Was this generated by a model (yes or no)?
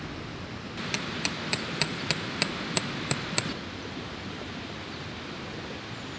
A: no